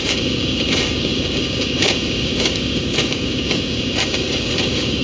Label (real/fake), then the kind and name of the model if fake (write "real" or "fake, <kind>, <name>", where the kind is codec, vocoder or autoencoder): fake, codec, DAC